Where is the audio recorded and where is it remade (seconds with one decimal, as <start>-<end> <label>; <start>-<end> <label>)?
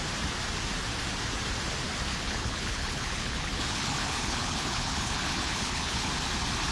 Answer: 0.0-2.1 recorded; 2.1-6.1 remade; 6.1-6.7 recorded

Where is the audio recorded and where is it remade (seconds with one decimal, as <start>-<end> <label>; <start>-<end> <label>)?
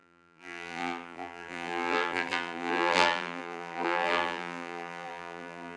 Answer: 0.0-5.8 remade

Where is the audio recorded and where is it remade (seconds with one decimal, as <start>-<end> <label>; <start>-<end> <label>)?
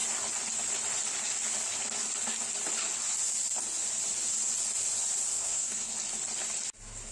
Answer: 0.0-5.3 recorded; 5.3-5.9 remade; 5.9-7.1 recorded